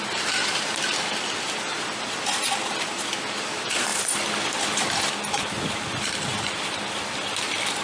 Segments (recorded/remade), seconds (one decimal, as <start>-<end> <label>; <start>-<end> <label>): 0.0-7.8 recorded